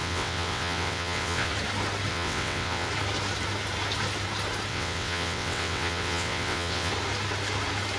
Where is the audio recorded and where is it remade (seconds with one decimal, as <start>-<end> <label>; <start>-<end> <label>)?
0.0-1.5 remade; 1.5-2.1 recorded; 2.1-2.9 remade; 2.9-4.7 recorded; 4.7-6.9 remade; 6.9-8.0 recorded